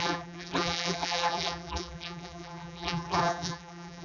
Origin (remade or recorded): remade